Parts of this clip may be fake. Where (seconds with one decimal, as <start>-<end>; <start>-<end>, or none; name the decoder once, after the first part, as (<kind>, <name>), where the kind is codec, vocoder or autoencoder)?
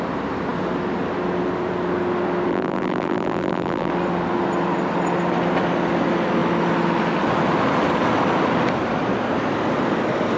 2.5-3.9 (vocoder, BigVGAN v2)